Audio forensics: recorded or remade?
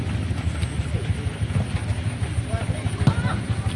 recorded